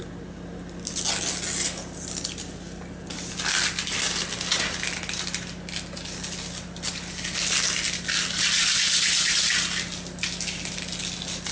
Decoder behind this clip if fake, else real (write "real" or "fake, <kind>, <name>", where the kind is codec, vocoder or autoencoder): real